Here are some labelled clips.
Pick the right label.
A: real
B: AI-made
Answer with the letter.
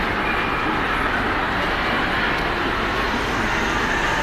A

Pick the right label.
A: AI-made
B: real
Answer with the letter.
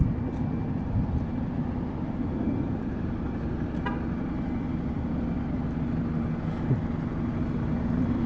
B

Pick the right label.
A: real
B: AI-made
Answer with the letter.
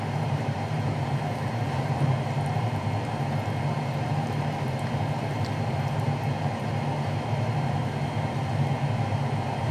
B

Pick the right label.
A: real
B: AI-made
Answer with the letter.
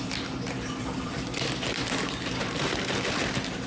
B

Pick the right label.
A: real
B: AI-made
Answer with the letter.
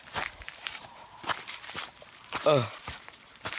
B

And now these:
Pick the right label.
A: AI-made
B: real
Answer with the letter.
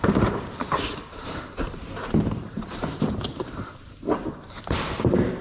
A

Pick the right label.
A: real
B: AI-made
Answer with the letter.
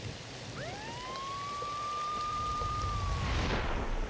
B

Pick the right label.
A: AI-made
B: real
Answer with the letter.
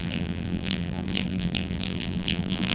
A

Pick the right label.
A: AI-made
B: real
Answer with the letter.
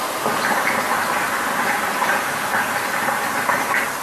B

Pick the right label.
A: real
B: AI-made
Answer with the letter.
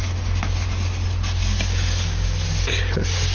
A